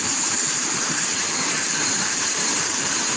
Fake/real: fake